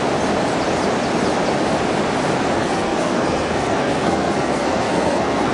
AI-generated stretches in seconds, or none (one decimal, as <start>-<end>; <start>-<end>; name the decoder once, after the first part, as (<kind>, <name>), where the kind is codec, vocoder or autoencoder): 2.6-5.5 (codec, SNAC)